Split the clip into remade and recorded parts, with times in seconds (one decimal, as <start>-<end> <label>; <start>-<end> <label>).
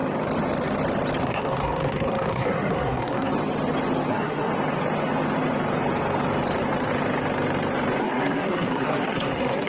0.0-1.2 recorded; 1.2-3.3 remade; 3.3-4.1 recorded; 4.1-4.5 remade; 4.5-8.0 recorded; 8.0-9.7 remade